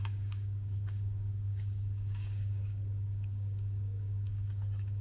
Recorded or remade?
remade